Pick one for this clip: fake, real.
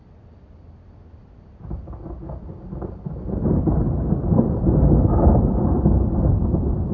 real